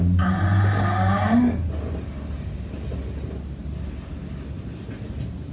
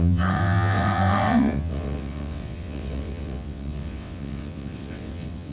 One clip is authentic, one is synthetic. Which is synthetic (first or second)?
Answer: second